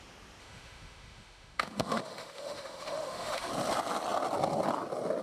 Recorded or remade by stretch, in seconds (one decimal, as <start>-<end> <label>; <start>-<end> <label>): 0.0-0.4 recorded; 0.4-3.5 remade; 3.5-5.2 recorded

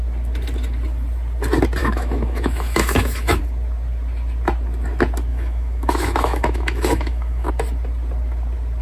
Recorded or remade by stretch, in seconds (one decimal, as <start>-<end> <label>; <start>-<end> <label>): 0.0-1.8 recorded; 1.8-3.4 remade; 3.4-5.3 recorded; 5.3-7.5 remade; 7.5-8.8 recorded

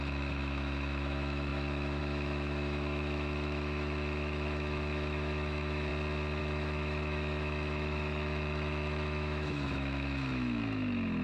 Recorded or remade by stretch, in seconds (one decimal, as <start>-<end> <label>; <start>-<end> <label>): 0.0-5.9 remade; 5.9-6.4 recorded; 6.4-11.2 remade

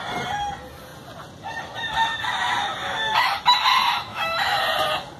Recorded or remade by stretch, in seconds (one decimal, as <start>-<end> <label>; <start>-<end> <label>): 0.0-4.1 recorded; 4.1-4.6 remade; 4.6-5.2 recorded